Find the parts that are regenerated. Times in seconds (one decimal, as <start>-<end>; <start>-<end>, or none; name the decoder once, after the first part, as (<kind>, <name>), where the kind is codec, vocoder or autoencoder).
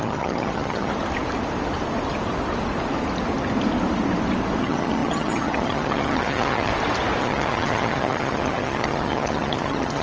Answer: 0.0-0.9 (vocoder, HiFi-GAN); 4.6-6.7; 7.2-10.0